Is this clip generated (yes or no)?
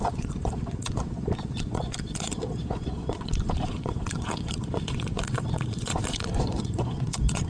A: yes